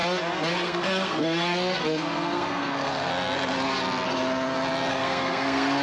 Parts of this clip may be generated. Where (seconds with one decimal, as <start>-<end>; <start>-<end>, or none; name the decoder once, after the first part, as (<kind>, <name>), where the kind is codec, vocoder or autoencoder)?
0.5-3.1 (codec, SNAC); 4.9-5.8